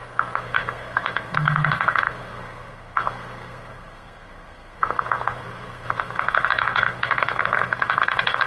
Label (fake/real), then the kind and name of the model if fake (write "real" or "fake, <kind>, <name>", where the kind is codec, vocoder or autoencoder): fake, codec, SNAC